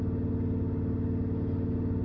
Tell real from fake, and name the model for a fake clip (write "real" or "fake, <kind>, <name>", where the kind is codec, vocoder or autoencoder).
real